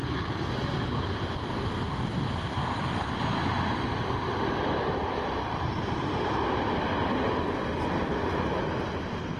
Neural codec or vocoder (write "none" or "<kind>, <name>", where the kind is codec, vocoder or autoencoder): none